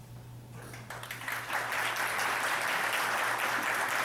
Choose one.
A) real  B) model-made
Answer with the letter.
A